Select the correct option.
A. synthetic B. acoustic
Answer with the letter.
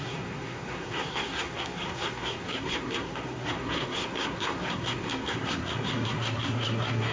A